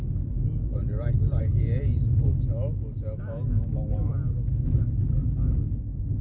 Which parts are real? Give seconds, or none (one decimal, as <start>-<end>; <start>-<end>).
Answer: 0.0-6.2